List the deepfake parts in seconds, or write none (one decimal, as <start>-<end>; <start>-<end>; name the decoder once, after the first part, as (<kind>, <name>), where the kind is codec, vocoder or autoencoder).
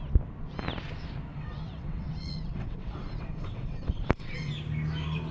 1.3-4.5 (vocoder, WaveNeXt)